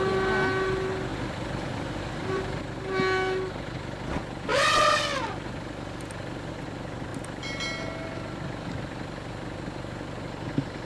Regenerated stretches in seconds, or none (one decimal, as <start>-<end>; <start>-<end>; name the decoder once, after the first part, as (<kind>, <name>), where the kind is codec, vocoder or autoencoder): 1.1-2.6 (vocoder, BigVGAN v2); 4.5-6.5